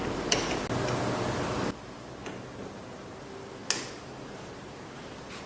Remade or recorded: recorded